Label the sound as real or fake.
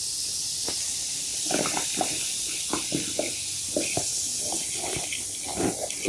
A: real